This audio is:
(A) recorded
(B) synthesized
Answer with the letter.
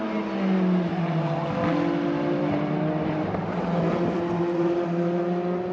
A